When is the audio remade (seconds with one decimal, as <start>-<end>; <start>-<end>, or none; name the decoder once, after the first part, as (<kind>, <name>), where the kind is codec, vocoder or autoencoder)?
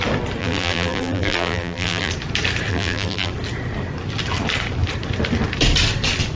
0.4-2.1 (vocoder, BigVGAN v2); 2.7-3.3